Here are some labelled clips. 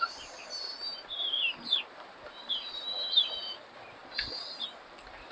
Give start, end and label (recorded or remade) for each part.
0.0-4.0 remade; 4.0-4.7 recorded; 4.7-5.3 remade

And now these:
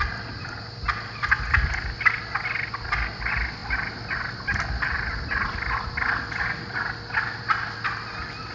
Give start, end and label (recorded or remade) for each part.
0.0-8.5 recorded

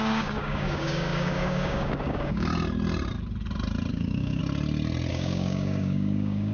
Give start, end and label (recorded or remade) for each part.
0.0-2.5 remade; 2.5-3.9 recorded; 3.9-4.4 remade; 4.4-5.1 recorded; 5.1-6.5 remade

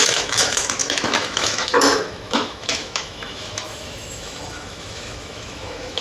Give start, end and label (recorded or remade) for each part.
0.0-6.0 remade

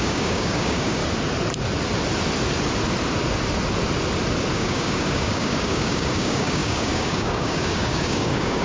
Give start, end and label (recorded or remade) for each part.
0.0-1.0 remade; 1.0-4.5 recorded; 4.5-8.6 remade

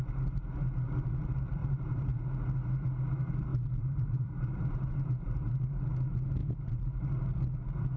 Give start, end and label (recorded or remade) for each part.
0.0-1.6 recorded; 1.6-2.2 remade; 2.2-3.5 recorded; 3.5-5.8 remade; 5.8-6.4 recorded; 6.4-7.0 remade; 7.0-8.0 recorded

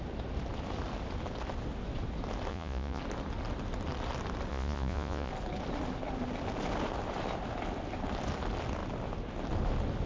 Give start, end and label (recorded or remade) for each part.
0.0-2.5 recorded; 2.5-3.0 remade; 3.0-4.5 recorded; 4.5-5.3 remade; 5.3-10.1 recorded